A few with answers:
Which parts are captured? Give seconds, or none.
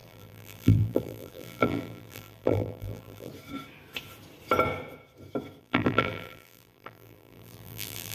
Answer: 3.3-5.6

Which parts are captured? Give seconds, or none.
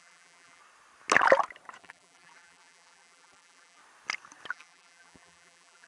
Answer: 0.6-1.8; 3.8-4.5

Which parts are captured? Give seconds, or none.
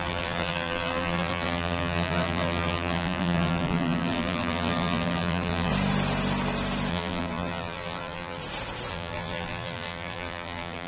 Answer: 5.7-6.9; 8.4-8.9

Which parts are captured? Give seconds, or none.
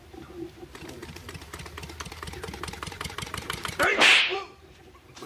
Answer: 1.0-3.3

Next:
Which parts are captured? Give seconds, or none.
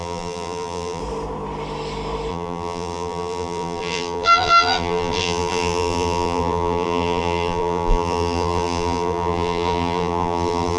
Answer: 1.0-2.3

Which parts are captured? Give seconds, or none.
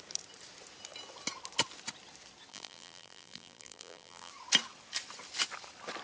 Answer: 0.0-2.5; 4.3-6.0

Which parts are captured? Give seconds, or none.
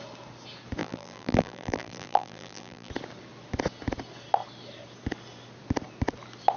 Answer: 0.0-0.8; 2.9-6.6